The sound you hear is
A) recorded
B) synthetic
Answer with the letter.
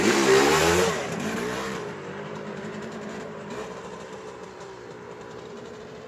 B